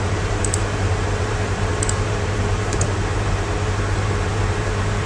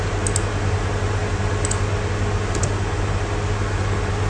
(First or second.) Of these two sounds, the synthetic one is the first